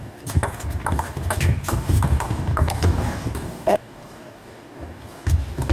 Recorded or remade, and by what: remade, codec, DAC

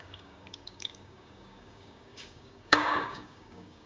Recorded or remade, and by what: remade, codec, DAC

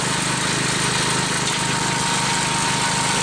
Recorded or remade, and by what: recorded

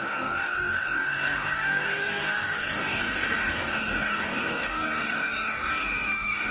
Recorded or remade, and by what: remade, codec, DAC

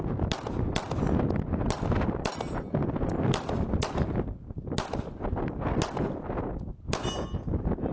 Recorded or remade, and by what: recorded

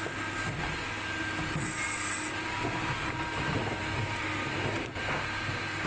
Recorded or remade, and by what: recorded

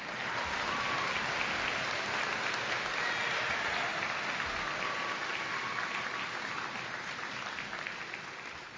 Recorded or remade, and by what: recorded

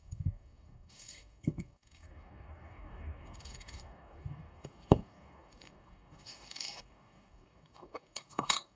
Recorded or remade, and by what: remade, codec, DAC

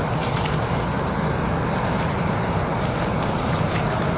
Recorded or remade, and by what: recorded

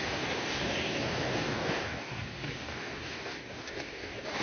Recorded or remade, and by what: remade, codec, DAC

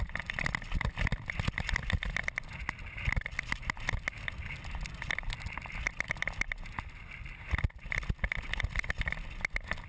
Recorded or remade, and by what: recorded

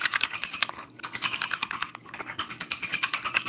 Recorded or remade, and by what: remade, codec, DAC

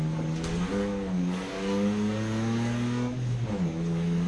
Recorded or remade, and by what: remade, codec, DAC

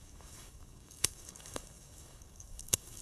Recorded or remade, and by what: remade, codec, DAC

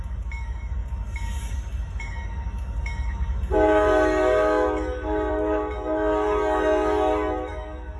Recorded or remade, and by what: remade, codec, DAC